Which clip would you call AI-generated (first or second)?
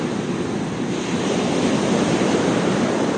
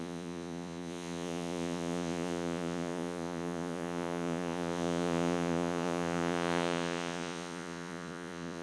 second